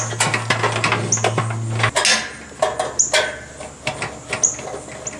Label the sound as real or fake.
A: real